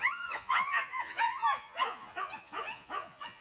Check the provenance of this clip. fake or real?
fake